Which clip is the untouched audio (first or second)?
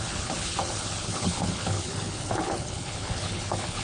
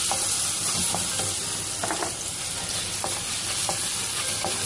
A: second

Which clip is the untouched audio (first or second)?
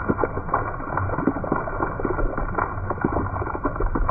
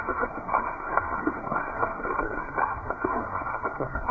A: first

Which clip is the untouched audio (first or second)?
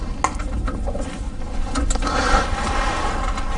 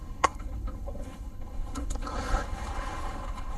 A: first